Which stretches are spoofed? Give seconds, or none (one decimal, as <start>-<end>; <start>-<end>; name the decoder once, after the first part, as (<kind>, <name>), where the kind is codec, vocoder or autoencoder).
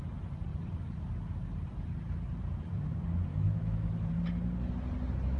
3.3-4.1 (autoencoder, DAC-VAE)